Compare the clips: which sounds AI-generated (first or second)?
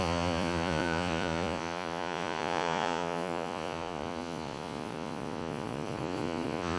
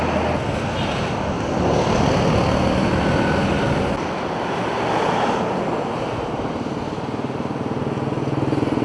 first